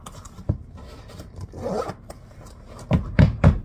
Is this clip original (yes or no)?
no